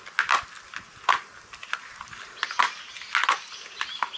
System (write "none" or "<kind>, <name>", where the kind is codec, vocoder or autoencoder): none